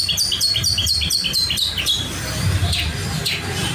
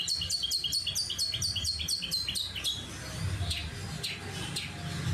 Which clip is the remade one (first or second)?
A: first